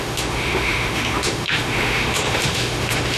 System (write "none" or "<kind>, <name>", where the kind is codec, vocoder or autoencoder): autoencoder, DAC-VAE